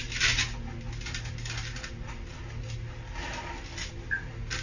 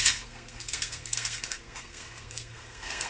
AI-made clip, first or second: second